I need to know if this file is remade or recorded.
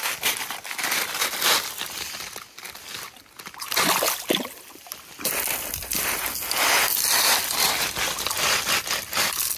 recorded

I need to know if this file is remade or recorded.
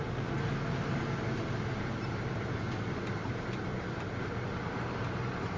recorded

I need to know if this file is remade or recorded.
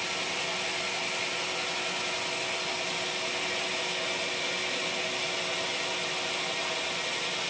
recorded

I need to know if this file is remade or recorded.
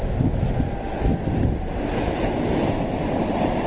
recorded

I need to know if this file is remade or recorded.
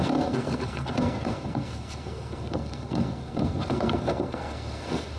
remade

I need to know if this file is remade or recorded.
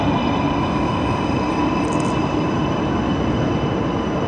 recorded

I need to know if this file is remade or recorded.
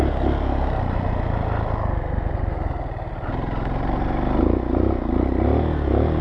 recorded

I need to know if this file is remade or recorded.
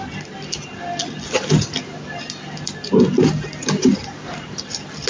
recorded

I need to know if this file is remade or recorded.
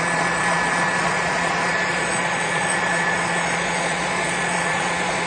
remade